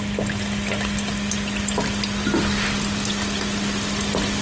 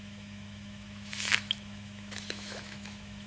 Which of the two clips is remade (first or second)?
second